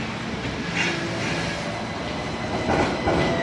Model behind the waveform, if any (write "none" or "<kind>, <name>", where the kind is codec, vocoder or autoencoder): none